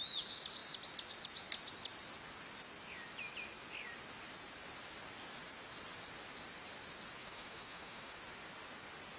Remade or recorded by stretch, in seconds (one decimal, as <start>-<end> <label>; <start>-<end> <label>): 0.0-7.2 recorded; 7.2-8.2 remade; 8.2-9.2 recorded